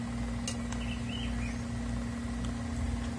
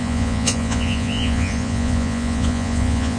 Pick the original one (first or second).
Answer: first